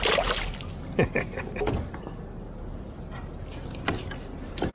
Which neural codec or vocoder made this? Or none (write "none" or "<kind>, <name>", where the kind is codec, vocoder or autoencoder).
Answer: none